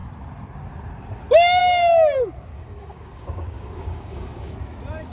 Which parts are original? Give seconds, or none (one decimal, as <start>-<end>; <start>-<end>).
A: 0.0-2.5; 4.5-5.1